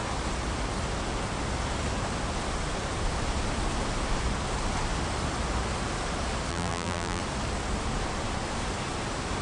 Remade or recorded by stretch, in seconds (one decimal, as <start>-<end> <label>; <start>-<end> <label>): 0.0-6.5 recorded; 6.5-7.2 remade; 7.2-9.4 recorded